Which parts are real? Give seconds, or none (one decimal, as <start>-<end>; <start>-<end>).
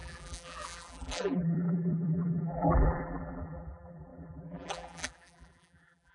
none